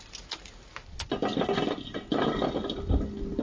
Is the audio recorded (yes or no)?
yes